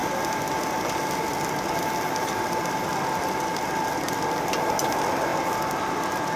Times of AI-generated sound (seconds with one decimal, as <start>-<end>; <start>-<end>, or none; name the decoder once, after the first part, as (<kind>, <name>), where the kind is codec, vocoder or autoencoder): none

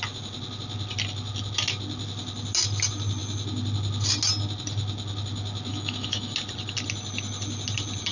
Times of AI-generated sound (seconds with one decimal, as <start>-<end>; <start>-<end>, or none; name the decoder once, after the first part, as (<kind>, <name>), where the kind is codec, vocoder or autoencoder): 5.7-6.3 (autoencoder, DAC-VAE)

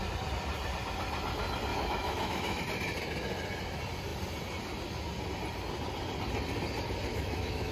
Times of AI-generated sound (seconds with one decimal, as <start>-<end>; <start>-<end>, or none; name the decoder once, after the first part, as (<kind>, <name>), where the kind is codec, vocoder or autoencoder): 1.7-2.6 (autoencoder, DAC-VAE); 7.1-7.7